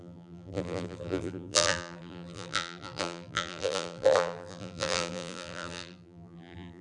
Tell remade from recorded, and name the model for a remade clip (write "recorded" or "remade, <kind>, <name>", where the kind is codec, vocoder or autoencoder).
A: remade, vocoder, BigVGAN v2